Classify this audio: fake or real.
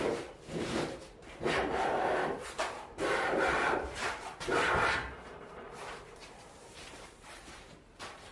fake